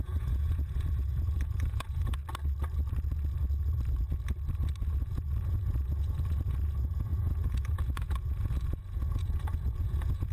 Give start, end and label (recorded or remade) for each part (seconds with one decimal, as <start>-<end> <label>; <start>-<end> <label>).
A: 0.0-2.2 remade; 2.2-4.9 recorded; 4.9-10.3 remade